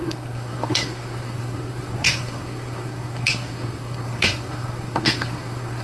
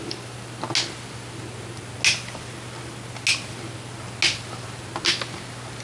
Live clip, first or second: second